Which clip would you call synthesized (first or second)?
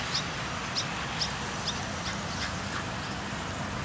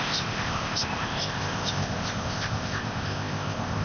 second